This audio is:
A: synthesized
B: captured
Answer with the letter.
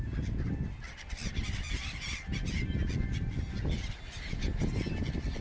B